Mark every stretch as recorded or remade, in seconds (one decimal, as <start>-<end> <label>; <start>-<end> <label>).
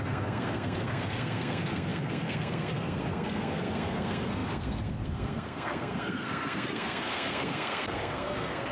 0.0-8.7 remade